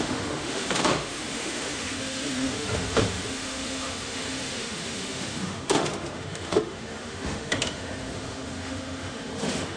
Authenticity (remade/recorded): remade